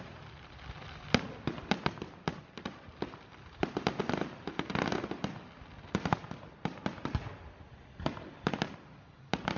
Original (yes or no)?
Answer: yes